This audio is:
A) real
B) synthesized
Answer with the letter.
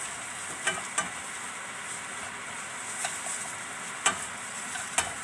A